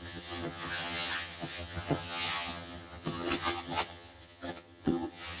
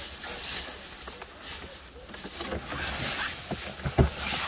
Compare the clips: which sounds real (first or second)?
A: second